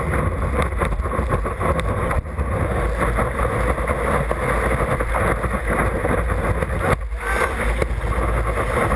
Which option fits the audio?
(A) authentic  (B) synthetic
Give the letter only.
A